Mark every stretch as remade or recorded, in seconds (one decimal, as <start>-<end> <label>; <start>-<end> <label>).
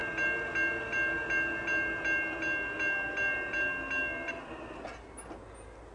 0.0-5.9 recorded